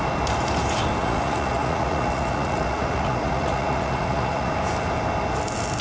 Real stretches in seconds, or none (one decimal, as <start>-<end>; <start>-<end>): 0.0-1.0; 4.5-5.8